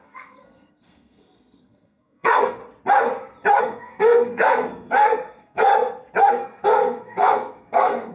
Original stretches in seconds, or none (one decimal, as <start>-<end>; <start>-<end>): 2.6-3.6; 5.7-6.3